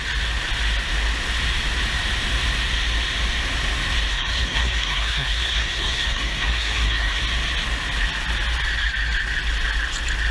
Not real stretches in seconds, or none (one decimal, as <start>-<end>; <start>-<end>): 4.1-7.2